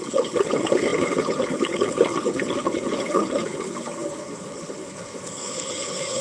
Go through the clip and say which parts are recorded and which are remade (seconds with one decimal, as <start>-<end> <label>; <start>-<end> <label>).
0.0-6.2 remade